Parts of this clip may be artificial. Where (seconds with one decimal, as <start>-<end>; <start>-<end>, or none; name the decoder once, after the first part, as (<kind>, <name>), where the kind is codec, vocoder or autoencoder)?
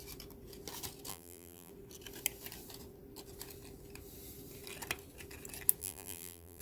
1.1-1.7 (vocoder, BigVGAN v2); 5.8-6.6